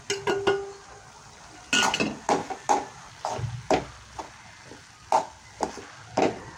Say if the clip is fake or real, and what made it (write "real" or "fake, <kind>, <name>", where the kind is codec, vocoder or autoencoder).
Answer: real